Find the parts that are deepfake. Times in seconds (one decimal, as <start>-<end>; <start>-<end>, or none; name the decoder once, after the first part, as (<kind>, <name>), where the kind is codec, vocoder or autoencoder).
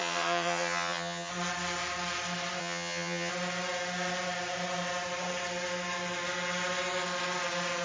0.0-1.3 (vocoder, HiFi-GAN); 2.6-3.3